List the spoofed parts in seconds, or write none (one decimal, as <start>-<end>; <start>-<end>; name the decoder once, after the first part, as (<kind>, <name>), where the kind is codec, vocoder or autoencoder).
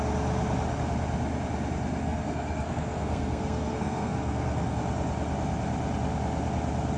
2.0-4.8 (codec, SNAC)